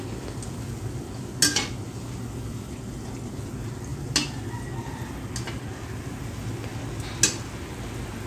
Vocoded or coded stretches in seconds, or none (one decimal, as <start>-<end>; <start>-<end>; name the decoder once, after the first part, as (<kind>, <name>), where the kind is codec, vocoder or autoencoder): none